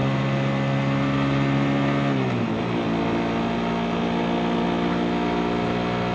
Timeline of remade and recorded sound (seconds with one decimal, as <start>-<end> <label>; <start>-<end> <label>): 0.0-6.1 recorded